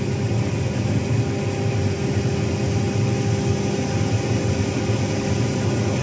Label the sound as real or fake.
real